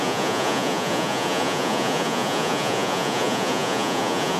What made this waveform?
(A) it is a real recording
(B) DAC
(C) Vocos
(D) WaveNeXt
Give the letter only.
C